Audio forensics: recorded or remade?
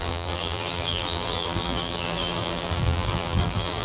remade